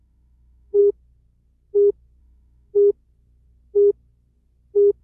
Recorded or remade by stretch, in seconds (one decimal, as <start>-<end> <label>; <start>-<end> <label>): 0.0-0.8 remade; 0.8-2.2 recorded; 2.2-2.7 remade; 2.7-5.0 recorded